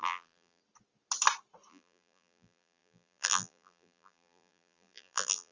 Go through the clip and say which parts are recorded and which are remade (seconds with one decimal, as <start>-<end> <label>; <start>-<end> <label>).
0.0-0.6 remade; 0.6-1.7 recorded; 1.7-5.5 remade